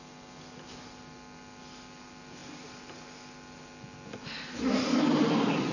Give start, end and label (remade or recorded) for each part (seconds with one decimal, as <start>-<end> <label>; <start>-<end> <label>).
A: 0.0-5.7 recorded